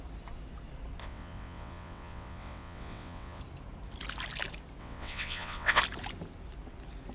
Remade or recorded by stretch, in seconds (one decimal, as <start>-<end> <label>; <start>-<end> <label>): 0.0-1.0 recorded; 1.0-3.4 remade; 3.4-4.8 recorded; 4.8-5.8 remade; 5.8-7.1 recorded